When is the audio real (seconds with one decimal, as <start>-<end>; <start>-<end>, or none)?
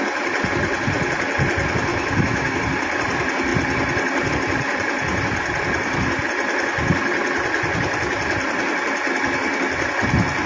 0.0-1.9; 2.6-10.5